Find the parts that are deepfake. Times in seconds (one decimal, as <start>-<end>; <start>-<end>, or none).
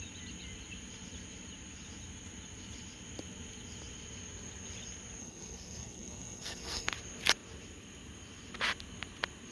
5.2-6.9